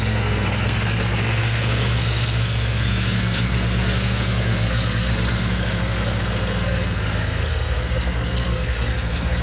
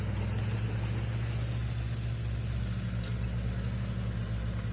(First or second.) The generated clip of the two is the first